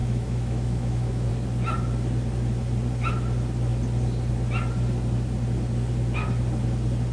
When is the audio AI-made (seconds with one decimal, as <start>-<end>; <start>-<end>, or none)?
0.0-1.3